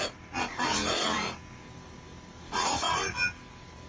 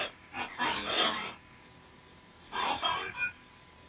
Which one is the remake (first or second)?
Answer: second